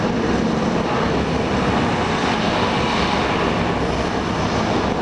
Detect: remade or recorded recorded